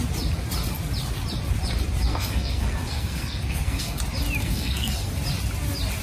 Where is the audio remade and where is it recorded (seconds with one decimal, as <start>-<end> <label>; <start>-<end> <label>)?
0.0-2.1 recorded; 2.1-4.0 remade; 4.0-4.4 recorded; 4.4-5.1 remade; 5.1-6.0 recorded